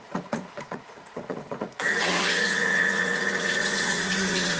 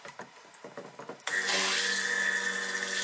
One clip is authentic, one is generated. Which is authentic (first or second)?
second